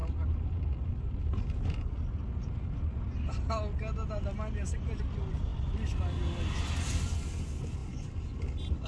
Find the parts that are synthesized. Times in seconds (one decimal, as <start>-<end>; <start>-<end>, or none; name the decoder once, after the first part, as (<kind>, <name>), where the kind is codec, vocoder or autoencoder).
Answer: none